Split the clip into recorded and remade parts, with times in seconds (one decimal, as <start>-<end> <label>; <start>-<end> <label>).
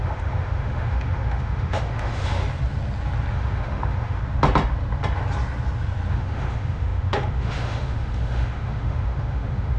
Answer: 0.0-2.4 remade; 2.4-3.3 recorded; 3.3-4.2 remade; 4.2-6.1 recorded; 6.1-9.8 remade